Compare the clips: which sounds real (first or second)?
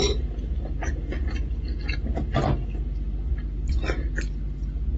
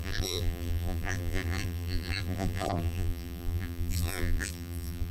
first